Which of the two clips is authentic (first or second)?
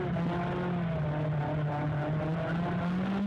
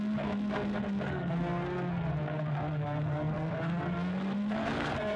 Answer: first